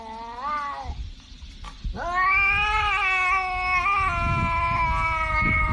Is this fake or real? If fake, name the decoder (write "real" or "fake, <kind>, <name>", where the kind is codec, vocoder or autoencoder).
real